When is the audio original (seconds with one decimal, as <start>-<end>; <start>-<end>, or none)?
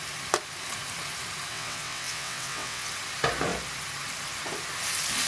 0.0-1.5; 2.9-5.3